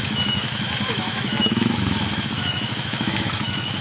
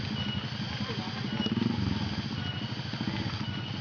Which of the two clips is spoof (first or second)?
first